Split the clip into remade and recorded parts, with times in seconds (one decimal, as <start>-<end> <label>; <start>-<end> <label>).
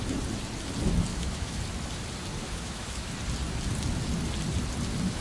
0.0-1.1 recorded; 1.1-1.6 remade; 1.6-2.4 recorded; 2.4-3.1 remade; 3.1-5.2 recorded